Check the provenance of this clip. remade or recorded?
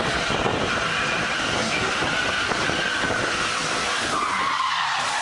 recorded